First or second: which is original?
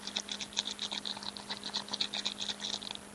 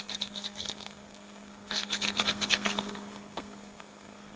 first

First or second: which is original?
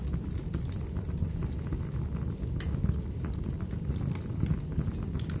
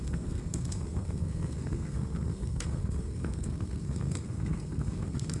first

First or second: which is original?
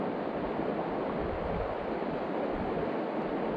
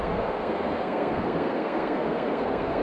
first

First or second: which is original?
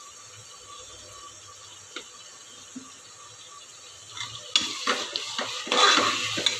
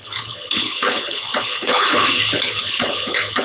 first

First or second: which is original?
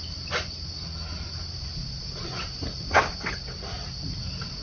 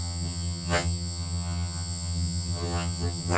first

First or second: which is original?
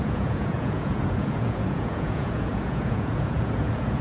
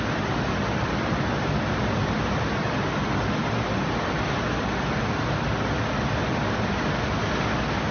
second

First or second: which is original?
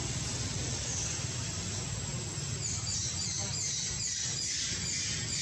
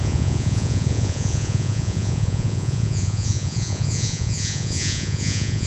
first